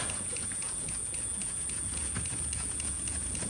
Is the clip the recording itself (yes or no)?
no